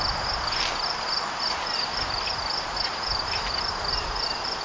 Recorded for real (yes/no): yes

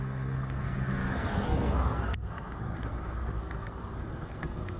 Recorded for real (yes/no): no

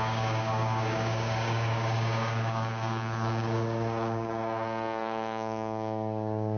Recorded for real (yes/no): no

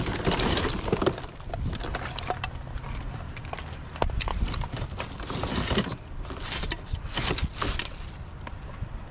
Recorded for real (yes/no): yes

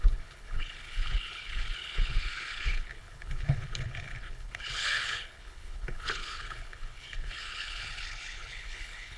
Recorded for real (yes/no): no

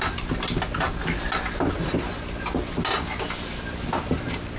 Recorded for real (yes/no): yes